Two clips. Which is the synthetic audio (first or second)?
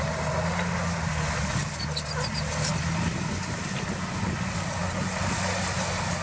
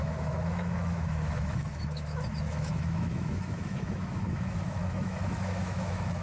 second